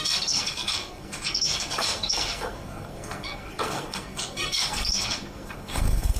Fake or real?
fake